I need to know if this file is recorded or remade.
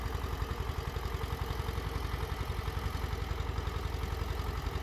recorded